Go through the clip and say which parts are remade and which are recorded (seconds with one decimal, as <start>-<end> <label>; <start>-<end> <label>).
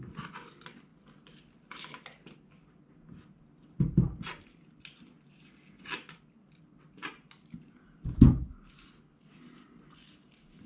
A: 0.0-10.7 recorded